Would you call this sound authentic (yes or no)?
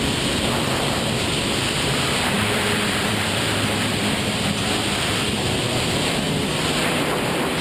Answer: no